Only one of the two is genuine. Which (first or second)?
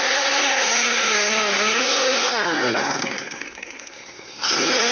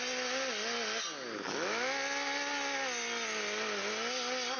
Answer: second